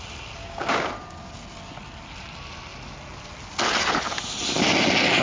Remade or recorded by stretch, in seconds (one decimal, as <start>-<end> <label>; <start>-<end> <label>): 0.0-0.4 recorded; 0.4-0.9 remade; 0.9-5.2 recorded